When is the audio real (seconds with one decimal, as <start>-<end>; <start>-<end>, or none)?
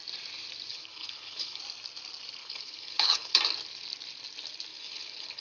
0.0-0.7; 1.6-2.4; 3.4-4.7